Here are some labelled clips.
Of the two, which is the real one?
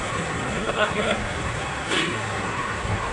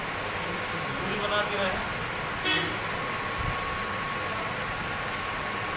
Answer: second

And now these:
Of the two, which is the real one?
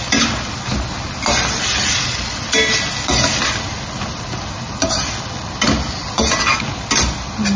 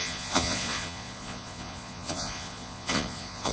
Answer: first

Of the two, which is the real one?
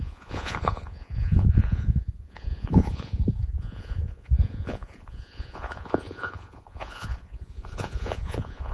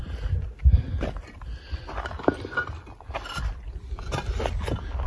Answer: second